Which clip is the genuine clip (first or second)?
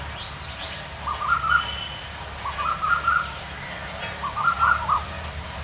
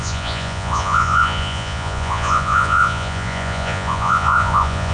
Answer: first